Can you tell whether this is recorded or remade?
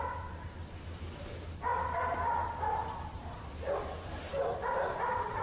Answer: remade